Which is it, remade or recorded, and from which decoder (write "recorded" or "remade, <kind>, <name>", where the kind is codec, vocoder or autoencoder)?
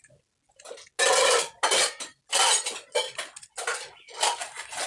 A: recorded